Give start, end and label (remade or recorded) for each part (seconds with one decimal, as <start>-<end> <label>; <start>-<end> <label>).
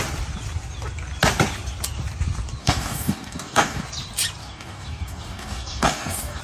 0.0-2.6 recorded; 2.6-3.8 remade; 3.8-4.4 recorded; 4.4-6.4 remade